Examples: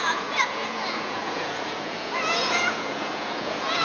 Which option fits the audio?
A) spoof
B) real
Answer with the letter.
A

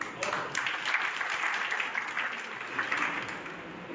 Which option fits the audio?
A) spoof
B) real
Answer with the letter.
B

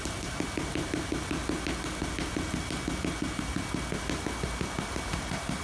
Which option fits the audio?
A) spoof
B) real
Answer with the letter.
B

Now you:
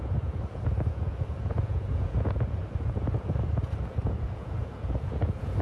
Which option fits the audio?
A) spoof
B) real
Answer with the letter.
A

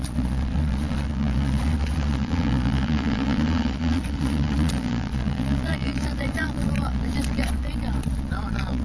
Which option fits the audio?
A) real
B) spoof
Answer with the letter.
B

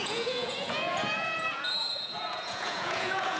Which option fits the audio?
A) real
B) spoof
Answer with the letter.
B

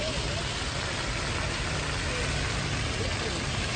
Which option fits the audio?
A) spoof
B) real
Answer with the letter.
B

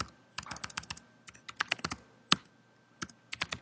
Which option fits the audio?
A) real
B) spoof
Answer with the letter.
A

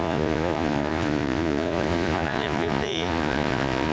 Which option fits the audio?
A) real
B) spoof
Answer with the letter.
B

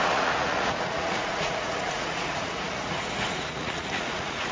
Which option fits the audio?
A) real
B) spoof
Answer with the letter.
B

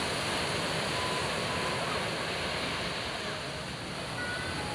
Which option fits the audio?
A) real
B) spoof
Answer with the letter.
A